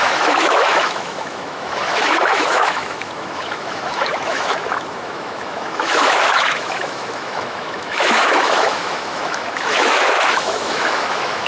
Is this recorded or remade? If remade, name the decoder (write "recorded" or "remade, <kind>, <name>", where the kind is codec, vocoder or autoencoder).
remade, autoencoder, DAC-VAE